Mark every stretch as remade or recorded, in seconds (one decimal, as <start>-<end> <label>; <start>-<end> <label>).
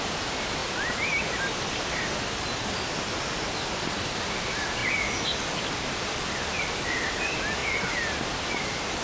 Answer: 0.0-0.6 remade; 0.6-4.0 recorded; 4.0-4.8 remade; 4.8-5.4 recorded; 5.4-7.6 remade; 7.6-8.5 recorded; 8.5-9.0 remade